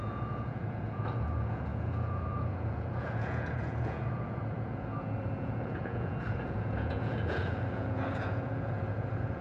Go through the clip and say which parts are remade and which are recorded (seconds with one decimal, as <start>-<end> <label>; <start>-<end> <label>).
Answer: 0.0-9.4 remade